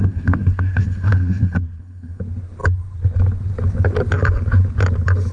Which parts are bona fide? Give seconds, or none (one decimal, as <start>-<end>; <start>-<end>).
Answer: 2.2-5.3